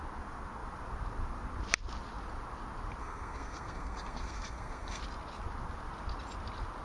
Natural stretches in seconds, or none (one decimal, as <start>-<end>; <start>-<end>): 0.0-3.0; 5.0-6.8